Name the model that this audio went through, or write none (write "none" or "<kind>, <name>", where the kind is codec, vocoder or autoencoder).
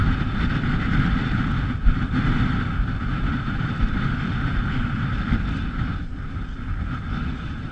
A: none